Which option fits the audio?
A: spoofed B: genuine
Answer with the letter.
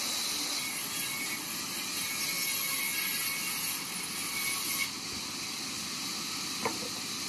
B